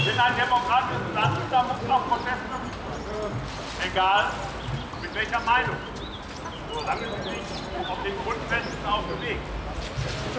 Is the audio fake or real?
real